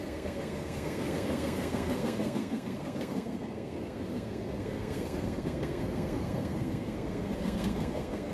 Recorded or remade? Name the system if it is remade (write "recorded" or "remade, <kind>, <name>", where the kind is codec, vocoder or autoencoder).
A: remade, codec, SNAC